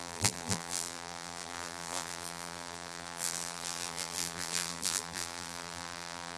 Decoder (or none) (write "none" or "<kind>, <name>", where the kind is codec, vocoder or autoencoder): vocoder, BigVGAN v2